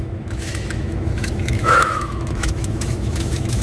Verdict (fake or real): fake